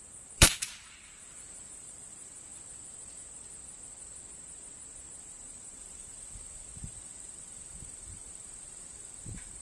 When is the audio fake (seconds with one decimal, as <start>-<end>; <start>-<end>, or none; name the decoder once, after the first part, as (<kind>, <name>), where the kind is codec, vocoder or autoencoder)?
0.0-2.5 (vocoder, BigVGAN v2); 5.2-9.6